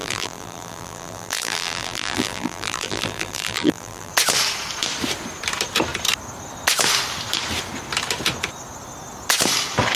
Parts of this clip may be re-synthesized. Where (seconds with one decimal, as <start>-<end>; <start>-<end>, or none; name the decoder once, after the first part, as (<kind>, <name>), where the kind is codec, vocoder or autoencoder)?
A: 0.0-4.1 (vocoder, BigVGAN v2)